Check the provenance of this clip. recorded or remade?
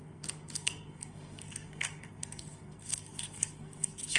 remade